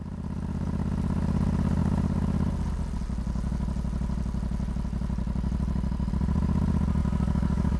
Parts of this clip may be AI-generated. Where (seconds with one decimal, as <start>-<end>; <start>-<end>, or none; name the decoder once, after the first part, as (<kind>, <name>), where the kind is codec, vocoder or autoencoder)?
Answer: 7.0-7.8 (codec, DAC)